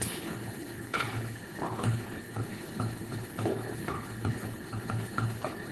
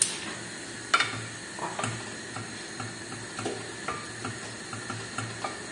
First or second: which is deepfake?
first